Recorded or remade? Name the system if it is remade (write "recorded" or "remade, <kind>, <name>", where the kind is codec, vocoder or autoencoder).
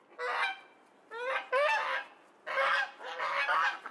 recorded